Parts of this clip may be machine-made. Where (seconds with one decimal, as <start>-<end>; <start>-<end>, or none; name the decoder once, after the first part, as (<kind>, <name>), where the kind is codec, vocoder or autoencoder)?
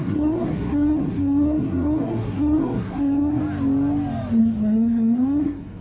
0.0-3.4 (codec, SNAC); 4.4-5.8